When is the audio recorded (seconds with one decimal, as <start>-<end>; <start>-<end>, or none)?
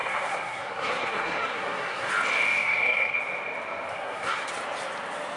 2.1-2.6; 3.2-3.9; 4.5-5.4